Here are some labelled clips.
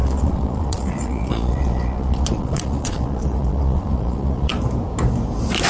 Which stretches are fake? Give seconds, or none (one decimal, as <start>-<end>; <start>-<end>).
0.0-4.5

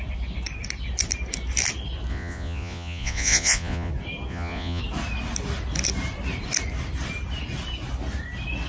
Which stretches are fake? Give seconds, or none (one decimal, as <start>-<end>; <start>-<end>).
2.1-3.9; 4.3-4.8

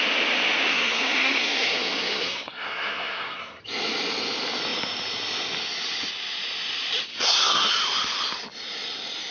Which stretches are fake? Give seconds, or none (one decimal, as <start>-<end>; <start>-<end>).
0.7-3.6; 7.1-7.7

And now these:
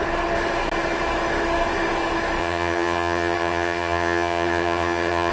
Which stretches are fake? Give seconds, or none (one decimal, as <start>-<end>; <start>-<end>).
2.4-5.3

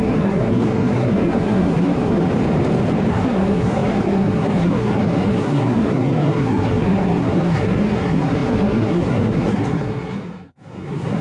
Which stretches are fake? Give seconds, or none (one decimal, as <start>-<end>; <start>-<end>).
0.0-2.2; 3.1-11.2

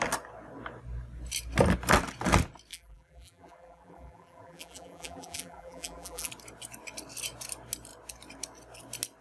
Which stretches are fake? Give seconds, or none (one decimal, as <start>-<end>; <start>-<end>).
2.7-6.3